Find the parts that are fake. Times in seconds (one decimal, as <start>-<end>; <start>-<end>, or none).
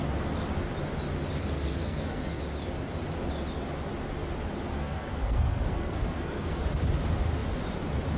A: 1.4-2.4; 4.7-6.6